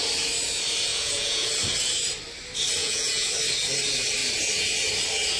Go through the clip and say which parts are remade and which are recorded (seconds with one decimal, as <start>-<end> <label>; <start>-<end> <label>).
0.0-0.9 recorded; 0.9-1.5 remade; 1.5-2.8 recorded; 2.8-3.3 remade; 3.3-5.4 recorded